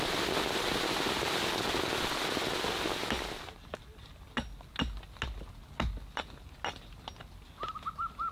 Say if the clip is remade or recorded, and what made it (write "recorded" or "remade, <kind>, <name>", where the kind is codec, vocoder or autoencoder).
recorded